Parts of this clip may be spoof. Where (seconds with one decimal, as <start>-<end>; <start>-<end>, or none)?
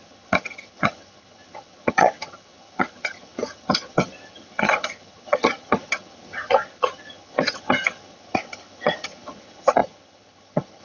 0.0-10.8